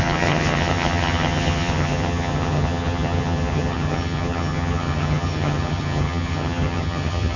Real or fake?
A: fake